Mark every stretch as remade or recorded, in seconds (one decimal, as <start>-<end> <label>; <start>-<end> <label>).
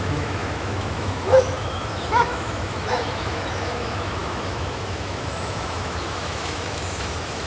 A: 0.0-7.5 remade